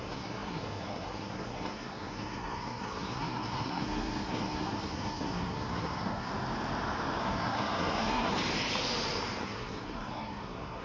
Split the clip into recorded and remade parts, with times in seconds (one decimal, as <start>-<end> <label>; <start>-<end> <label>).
0.0-6.3 remade; 6.3-7.2 recorded; 7.2-8.3 remade; 8.3-9.4 recorded; 9.4-10.8 remade